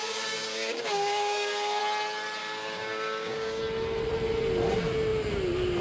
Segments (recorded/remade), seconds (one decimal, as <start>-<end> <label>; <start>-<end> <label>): 0.0-1.8 remade; 1.8-2.4 recorded; 2.4-3.6 remade; 3.6-5.8 recorded